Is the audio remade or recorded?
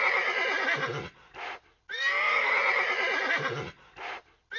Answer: recorded